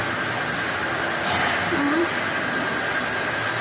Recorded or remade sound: recorded